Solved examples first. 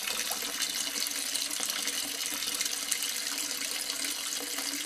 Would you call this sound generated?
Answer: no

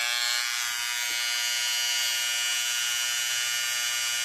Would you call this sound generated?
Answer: no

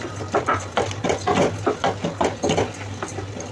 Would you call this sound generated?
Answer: no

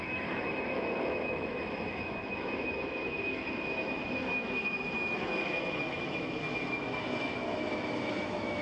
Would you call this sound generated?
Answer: yes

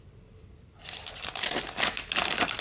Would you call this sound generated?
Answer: no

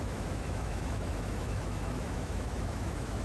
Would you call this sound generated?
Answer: yes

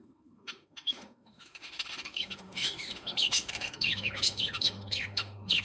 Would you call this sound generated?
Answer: yes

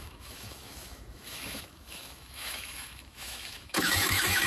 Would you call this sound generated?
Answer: yes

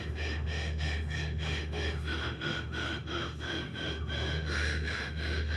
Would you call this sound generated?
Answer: yes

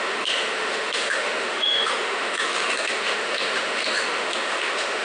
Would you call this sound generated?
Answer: yes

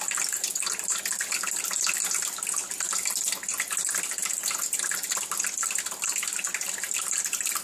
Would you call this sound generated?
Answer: no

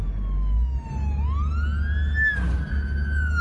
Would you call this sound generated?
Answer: no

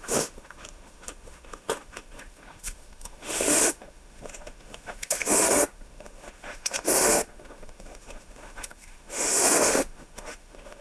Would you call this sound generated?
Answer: yes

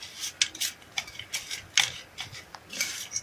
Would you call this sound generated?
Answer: no